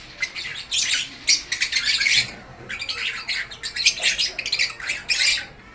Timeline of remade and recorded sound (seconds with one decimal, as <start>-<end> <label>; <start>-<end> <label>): 0.0-5.7 recorded